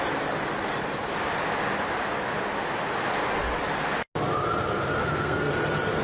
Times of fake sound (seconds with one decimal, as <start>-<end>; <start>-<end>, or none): 5.0-5.5